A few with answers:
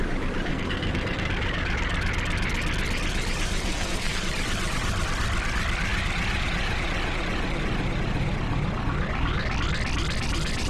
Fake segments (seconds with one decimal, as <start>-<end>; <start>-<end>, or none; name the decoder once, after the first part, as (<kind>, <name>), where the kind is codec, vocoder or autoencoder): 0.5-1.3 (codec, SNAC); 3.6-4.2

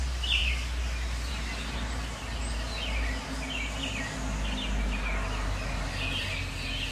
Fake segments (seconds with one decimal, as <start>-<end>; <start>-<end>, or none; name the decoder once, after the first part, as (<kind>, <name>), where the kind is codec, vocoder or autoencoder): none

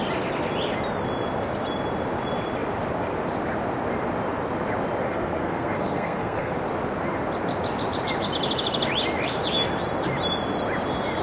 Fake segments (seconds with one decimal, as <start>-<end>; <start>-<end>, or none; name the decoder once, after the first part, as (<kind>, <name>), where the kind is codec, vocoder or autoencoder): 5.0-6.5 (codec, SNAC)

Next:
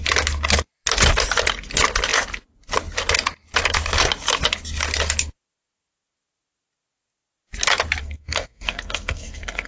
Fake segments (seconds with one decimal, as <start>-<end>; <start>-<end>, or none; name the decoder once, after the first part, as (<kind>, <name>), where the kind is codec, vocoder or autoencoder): 8.0-9.7 (codec, SNAC)

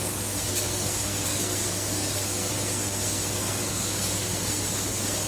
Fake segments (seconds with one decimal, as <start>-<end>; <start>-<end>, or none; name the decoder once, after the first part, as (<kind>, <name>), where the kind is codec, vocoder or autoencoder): 0.0-5.3 (codec, SNAC)

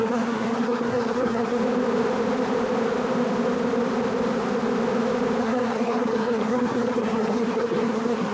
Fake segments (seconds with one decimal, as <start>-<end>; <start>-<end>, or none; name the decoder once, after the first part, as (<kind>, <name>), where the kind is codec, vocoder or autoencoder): 0.0-1.6 (codec, SNAC); 5.4-8.3

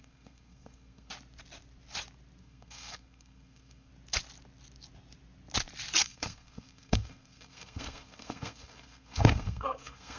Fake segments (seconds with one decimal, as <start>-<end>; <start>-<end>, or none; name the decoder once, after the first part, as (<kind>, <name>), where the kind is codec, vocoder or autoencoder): 0.0-1.1 (codec, SNAC); 2.4-3.9; 6.0-10.2

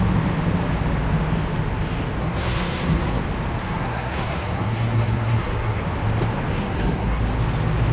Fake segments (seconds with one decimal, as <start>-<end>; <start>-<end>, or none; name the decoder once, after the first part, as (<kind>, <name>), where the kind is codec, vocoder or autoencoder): 2.2-3.2 (codec, SNAC); 3.6-5.8; 6.5-7.2